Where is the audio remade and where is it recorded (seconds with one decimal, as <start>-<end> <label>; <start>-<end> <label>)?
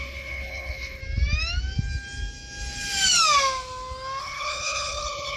0.0-1.0 remade; 1.0-4.2 recorded; 4.2-5.4 remade